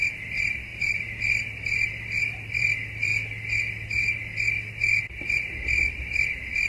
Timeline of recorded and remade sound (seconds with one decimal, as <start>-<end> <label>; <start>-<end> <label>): 0.0-3.1 remade; 3.1-5.0 recorded; 5.0-6.7 remade

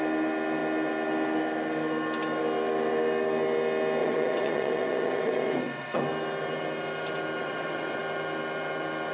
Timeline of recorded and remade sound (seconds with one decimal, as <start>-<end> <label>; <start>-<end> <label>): 0.0-4.0 recorded; 4.0-6.0 remade; 6.0-7.4 recorded; 7.4-8.0 remade; 8.0-9.1 recorded

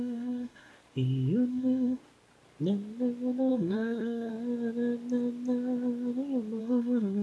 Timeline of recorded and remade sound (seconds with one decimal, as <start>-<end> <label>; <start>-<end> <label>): 0.0-0.7 remade; 0.7-1.5 recorded; 1.5-2.0 remade; 2.0-3.5 recorded; 3.5-4.3 remade; 4.3-6.6 recorded; 6.6-7.2 remade

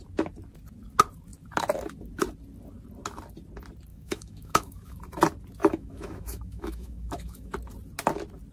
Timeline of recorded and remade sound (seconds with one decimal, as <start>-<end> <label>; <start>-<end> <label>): 0.0-3.9 recorded; 3.9-5.0 remade; 5.0-5.6 recorded; 5.6-7.5 remade; 7.5-8.5 recorded

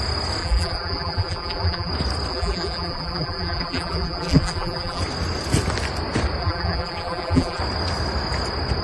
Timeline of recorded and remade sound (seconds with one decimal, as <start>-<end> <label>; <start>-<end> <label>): 0.0-0.4 recorded; 0.4-1.9 remade; 1.9-2.3 recorded; 2.3-5.0 remade; 5.0-6.4 recorded; 6.4-7.6 remade; 7.6-8.8 recorded

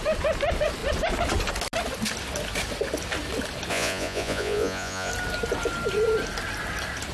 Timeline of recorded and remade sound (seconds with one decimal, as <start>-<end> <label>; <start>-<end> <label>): 0.0-3.7 recorded; 3.7-5.1 remade; 5.1-7.1 recorded

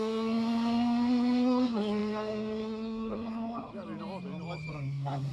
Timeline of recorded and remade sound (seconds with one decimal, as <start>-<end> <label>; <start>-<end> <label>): 0.0-3.7 remade; 3.7-4.7 recorded; 4.7-5.3 remade

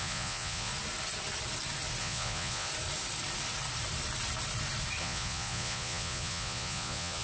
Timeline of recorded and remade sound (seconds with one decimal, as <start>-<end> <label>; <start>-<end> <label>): 0.0-0.7 remade; 0.7-2.0 recorded; 2.0-2.7 remade; 2.7-5.0 recorded; 5.0-7.2 remade